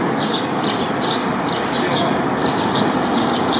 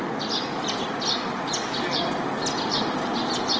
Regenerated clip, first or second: first